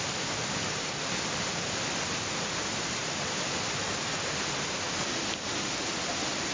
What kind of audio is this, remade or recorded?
recorded